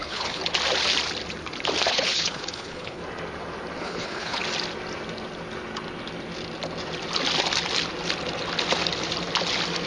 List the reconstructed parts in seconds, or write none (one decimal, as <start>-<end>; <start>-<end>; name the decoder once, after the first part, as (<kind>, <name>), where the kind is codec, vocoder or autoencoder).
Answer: 0.0-0.4 (codec, HILCodec); 1.9-3.0; 3.8-4.4